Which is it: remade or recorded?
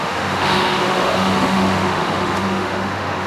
remade